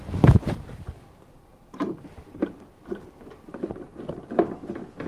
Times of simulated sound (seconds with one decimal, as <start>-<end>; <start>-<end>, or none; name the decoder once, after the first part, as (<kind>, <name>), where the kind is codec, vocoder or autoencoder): 1.5-2.7 (vocoder, BigVGAN v2); 3.5-4.0